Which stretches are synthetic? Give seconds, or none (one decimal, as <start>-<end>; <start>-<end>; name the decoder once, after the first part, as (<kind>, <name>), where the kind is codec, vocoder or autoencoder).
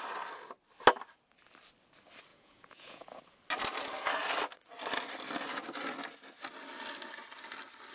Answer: 2.3-3.2 (vocoder, Vocos)